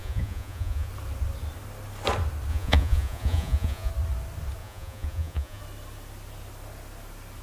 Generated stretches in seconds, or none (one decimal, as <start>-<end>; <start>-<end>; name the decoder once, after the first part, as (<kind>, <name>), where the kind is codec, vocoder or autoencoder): 0.0-0.9 (vocoder, Vocos); 2.5-3.9; 4.6-5.6